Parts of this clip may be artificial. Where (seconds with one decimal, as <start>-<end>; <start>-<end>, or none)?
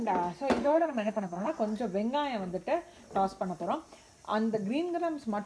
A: 0.6-1.5